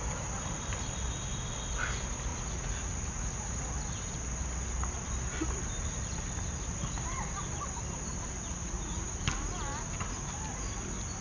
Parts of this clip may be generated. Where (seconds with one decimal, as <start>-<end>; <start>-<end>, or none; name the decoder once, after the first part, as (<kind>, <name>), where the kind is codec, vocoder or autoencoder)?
2.3-3.7 (vocoder, Vocos); 8.5-9.1